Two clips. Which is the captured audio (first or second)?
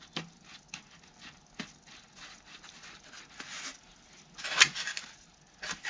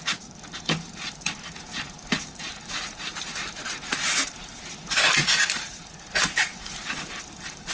first